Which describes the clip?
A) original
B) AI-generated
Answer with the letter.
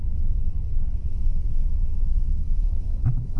B